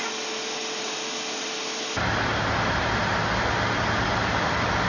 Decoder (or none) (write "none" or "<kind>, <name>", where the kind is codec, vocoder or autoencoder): none